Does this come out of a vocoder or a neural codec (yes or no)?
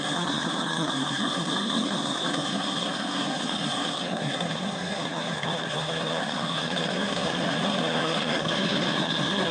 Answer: yes